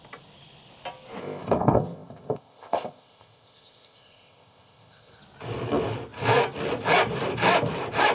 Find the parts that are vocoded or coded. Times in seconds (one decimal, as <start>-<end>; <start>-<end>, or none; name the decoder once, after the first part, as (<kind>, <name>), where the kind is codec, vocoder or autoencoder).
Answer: 1.2-5.2 (codec, ZipCodec)